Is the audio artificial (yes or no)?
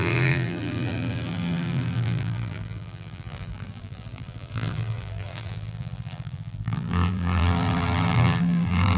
yes